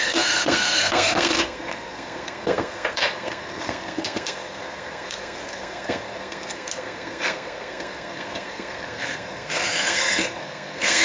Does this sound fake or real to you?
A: fake